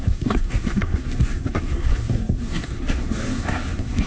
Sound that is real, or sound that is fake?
fake